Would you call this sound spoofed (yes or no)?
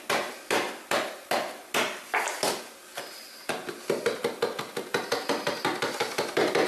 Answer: no